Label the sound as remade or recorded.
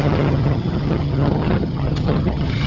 remade